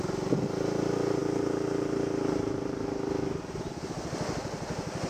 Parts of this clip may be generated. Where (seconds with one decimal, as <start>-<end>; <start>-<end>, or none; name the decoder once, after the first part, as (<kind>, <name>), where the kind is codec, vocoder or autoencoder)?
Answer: none